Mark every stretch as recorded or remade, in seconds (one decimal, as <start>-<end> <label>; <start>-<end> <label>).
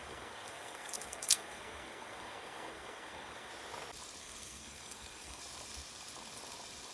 0.0-3.5 remade; 3.5-4.2 recorded; 4.2-5.4 remade; 5.4-6.9 recorded